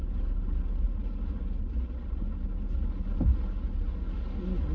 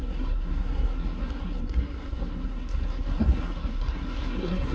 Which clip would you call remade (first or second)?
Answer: second